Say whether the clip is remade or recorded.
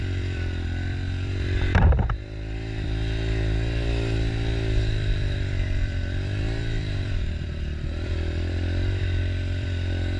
remade